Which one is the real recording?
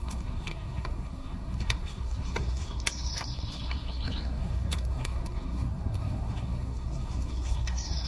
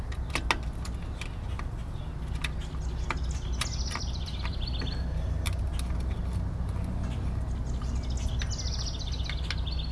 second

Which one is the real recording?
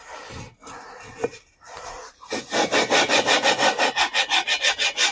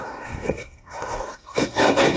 first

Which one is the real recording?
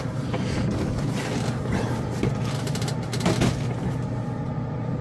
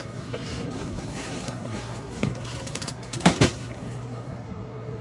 first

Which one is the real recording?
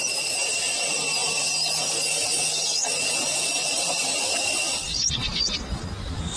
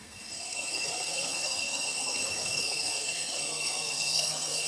first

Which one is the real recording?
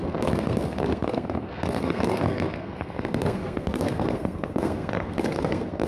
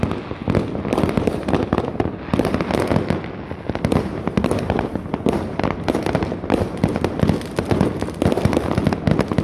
second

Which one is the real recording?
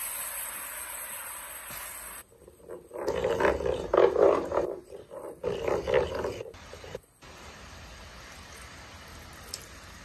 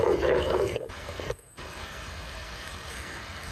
first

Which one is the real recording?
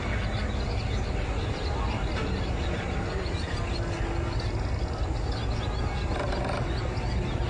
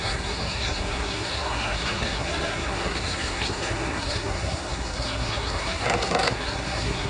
first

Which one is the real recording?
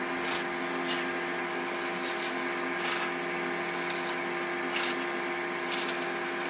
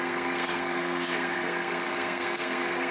first